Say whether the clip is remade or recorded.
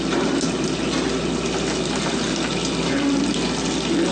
recorded